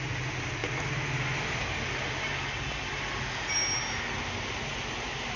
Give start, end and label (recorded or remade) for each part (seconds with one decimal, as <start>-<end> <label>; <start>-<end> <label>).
0.0-5.4 recorded